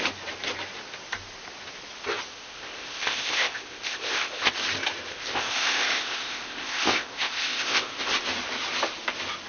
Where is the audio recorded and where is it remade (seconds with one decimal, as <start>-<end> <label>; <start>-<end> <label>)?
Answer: 0.0-2.3 recorded; 2.3-4.5 remade; 4.5-5.1 recorded; 5.1-8.1 remade; 8.1-9.5 recorded